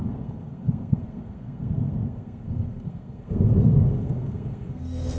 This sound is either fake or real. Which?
fake